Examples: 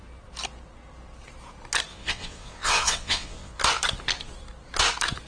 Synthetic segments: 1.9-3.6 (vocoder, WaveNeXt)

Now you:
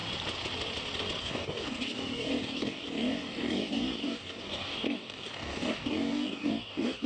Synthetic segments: 1.2-7.1 (codec, DAC)